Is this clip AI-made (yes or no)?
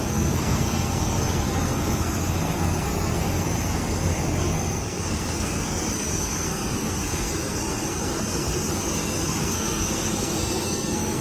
yes